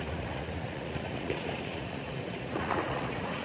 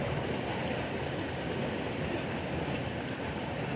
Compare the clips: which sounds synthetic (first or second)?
first